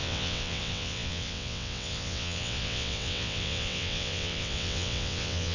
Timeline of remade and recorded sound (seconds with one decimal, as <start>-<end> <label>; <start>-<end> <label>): 0.0-5.5 remade